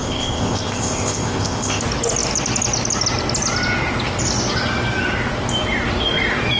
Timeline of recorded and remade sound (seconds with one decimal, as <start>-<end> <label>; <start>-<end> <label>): 0.0-1.8 remade; 1.8-6.6 recorded